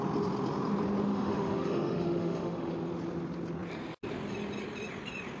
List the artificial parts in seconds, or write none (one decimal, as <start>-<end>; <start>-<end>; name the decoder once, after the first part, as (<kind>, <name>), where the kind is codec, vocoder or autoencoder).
1.1-2.7 (autoencoder, DAC-VAE)